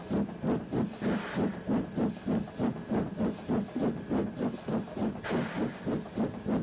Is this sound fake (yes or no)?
no